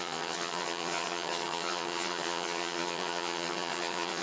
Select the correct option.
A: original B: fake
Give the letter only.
B